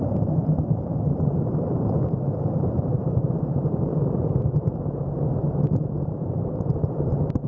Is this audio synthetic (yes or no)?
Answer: yes